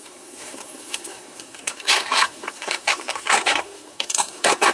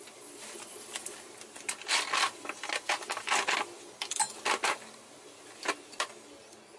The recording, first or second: second